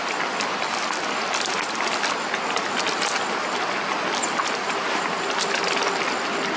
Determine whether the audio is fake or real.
real